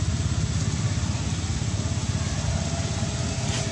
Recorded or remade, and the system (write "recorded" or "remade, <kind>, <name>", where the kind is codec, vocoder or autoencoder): recorded